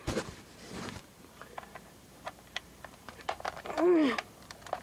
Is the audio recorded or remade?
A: remade